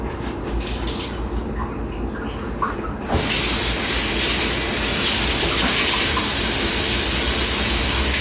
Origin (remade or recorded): recorded